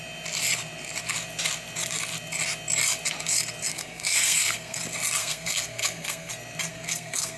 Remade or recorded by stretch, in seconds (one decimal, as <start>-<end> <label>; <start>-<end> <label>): 0.0-3.7 recorded; 3.7-4.8 remade; 4.8-5.2 recorded; 5.2-6.3 remade; 6.3-6.7 recorded; 6.7-7.4 remade